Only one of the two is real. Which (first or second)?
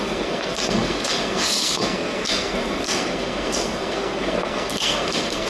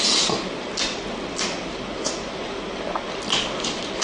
second